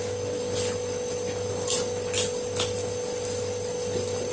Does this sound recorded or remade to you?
recorded